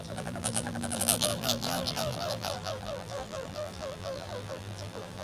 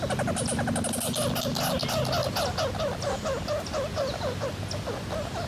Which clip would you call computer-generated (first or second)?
first